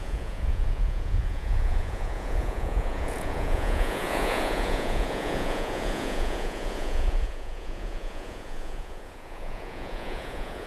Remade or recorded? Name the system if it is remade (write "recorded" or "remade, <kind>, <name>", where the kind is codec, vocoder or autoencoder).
remade, vocoder, Vocos